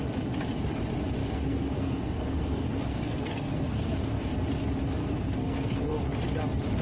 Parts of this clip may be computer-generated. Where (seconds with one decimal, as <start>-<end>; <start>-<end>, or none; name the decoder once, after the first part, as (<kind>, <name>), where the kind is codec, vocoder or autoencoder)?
1.2-4.3 (codec, SNAC); 5.0-5.8

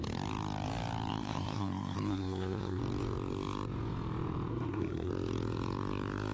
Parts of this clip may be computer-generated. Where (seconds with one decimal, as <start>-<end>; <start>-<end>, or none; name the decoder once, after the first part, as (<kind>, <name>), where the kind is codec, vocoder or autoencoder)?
1.1-2.8 (codec, SNAC); 4.5-5.1

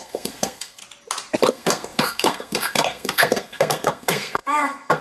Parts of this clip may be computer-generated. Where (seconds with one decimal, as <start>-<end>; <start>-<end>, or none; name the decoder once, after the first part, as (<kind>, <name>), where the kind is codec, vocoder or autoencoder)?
0.0-0.8 (codec, SNAC); 1.5-5.0